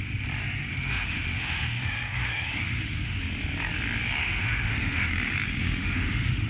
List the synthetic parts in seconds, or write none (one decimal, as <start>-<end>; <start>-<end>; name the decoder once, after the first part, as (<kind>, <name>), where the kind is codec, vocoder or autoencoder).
0.7-3.2 (autoencoder, DAC-VAE); 4.2-5.1; 5.8-6.5